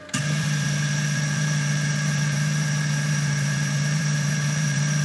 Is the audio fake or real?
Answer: fake